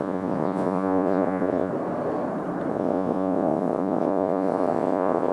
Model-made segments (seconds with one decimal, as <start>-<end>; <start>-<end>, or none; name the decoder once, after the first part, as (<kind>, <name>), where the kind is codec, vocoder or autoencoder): 0.0-1.7 (vocoder, Vocos); 2.7-5.3